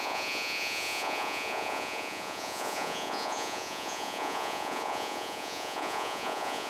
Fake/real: fake